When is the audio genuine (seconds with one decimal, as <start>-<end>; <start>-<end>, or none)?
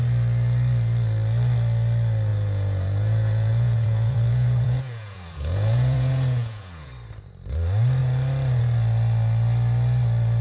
0.0-2.3; 6.9-10.4